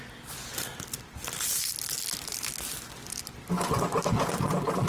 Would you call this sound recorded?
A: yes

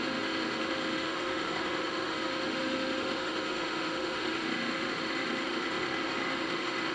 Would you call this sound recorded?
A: no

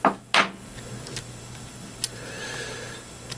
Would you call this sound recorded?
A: yes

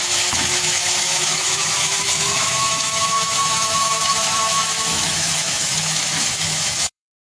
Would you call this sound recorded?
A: no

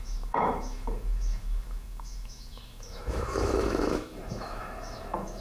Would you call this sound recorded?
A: no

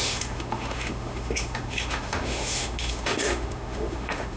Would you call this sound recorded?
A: no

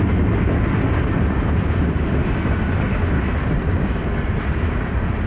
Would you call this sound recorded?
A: yes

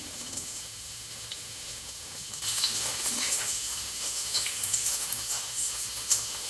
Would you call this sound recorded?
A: no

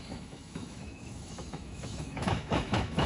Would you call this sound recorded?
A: no